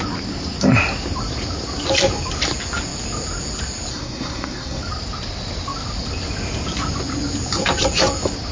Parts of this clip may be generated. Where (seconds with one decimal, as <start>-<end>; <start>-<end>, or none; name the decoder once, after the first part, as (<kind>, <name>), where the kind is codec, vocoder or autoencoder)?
3.9-4.8 (codec, SNAC)